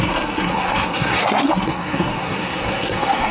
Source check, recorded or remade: remade